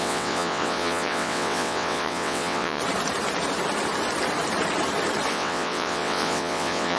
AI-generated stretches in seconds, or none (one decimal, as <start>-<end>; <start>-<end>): 0.0-2.8; 5.3-7.0

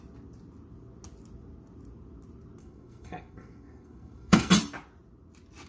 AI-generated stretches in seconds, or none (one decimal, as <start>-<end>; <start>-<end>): 2.6-4.5